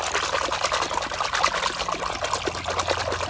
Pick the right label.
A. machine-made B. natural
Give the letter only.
B